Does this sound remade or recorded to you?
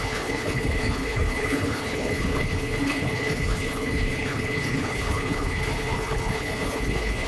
remade